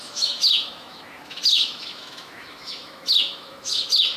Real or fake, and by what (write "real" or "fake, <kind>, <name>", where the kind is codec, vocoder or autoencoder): fake, autoencoder, DAC-VAE